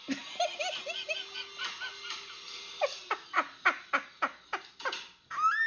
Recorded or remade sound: recorded